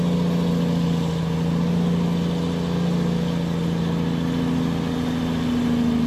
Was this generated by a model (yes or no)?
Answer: no